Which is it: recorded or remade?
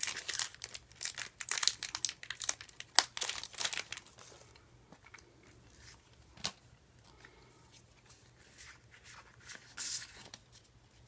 recorded